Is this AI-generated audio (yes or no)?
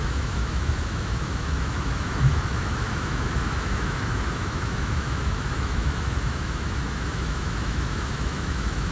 yes